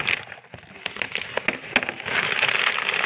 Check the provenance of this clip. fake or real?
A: real